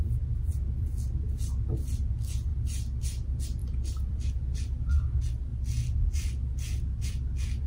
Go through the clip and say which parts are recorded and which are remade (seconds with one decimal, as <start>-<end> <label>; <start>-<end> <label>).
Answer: 0.0-3.6 recorded; 3.6-4.3 remade; 4.3-7.7 recorded